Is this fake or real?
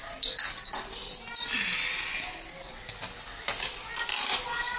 real